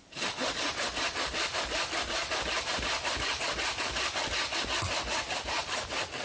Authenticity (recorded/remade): recorded